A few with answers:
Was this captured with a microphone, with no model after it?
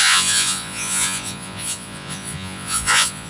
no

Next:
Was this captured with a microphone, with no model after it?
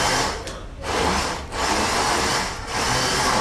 yes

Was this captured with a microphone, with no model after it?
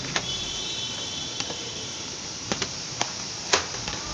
no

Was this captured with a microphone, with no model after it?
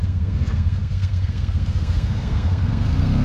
no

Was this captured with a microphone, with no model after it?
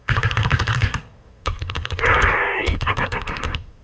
no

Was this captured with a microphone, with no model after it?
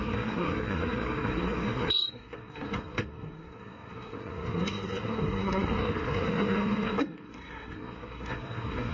no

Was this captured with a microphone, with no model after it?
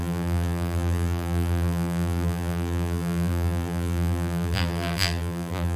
no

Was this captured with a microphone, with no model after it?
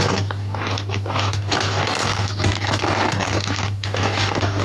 no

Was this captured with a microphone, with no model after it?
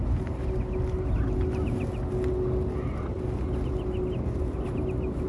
yes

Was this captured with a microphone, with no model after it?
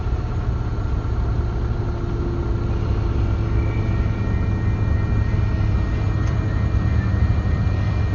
yes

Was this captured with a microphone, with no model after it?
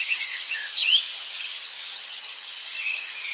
no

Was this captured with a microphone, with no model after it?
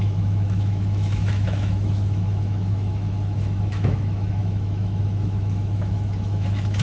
no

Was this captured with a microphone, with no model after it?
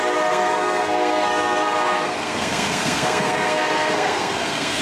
no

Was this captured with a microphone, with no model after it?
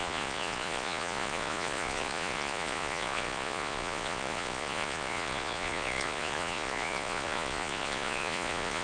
no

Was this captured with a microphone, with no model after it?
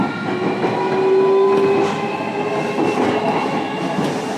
yes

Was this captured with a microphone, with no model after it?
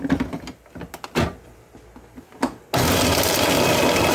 yes